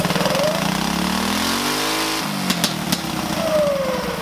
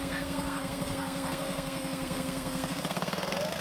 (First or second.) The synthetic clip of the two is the second